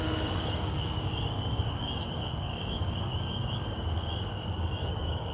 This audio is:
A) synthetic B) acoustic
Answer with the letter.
A